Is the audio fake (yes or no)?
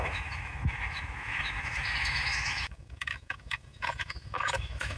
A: yes